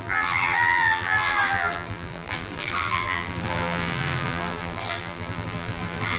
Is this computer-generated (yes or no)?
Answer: yes